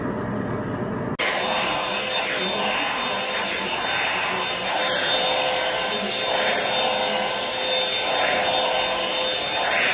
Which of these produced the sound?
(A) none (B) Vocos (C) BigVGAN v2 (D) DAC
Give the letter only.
A